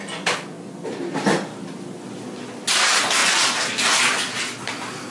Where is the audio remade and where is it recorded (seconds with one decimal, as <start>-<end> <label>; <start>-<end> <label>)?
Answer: 0.0-5.1 recorded